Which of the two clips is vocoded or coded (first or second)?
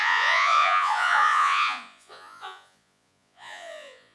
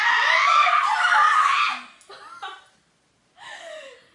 first